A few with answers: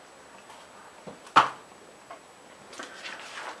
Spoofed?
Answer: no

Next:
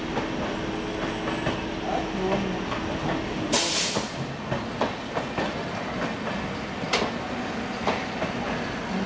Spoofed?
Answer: no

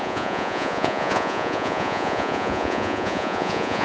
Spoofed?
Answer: yes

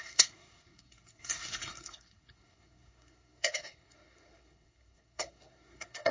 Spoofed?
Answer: yes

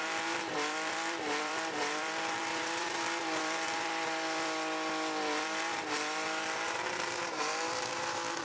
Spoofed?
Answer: yes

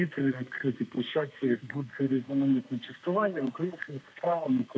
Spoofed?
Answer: yes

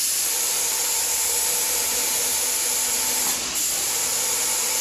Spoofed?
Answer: yes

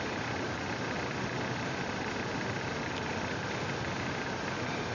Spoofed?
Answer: no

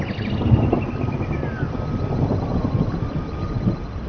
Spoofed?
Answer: no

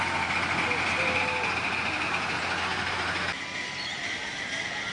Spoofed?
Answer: no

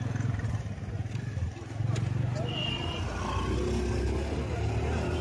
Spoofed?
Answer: no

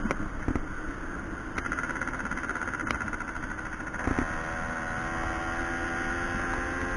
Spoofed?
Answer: no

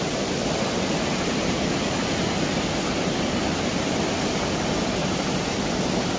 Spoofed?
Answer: no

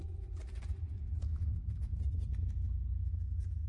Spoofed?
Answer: no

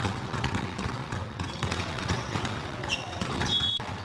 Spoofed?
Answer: yes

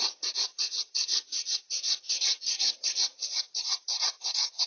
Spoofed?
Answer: yes